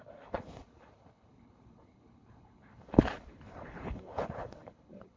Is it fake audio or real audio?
fake